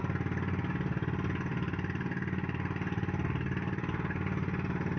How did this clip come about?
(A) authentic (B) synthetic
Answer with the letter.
A